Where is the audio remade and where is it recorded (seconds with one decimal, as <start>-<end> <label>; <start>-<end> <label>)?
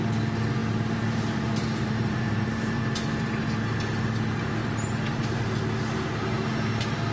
0.0-0.6 recorded; 0.6-2.8 remade; 2.8-4.6 recorded; 4.6-5.7 remade; 5.7-7.1 recorded